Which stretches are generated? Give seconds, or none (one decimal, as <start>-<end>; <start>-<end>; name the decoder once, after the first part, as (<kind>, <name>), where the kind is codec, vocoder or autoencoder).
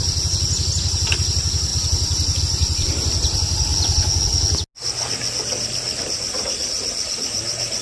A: none